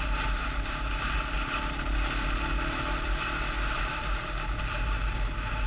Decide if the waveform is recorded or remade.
recorded